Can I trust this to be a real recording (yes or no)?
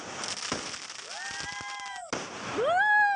yes